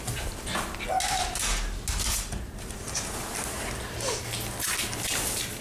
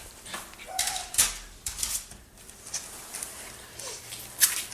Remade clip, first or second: second